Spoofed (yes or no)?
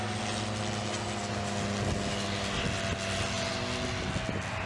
no